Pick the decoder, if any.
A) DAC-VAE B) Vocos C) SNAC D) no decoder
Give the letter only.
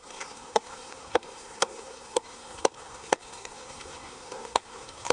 C